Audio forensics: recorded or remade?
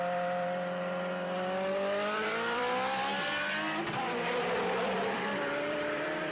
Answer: remade